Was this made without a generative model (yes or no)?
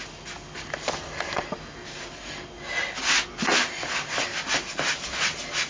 yes